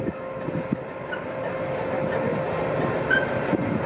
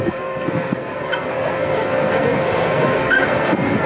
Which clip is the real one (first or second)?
first